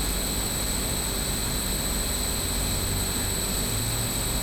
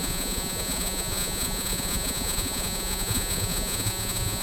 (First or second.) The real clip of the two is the first